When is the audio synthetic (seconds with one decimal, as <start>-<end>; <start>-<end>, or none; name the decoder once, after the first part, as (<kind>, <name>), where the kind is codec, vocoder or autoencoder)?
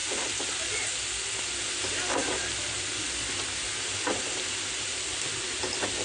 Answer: none